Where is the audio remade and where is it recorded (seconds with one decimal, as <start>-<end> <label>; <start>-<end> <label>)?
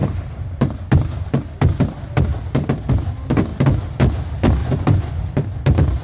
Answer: 0.0-4.6 recorded; 4.6-5.2 remade; 5.2-6.0 recorded